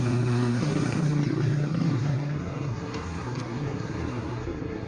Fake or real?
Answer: fake